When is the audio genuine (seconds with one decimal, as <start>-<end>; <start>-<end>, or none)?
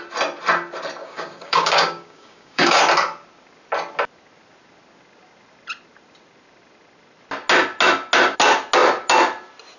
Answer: 0.0-1.0; 2.8-9.8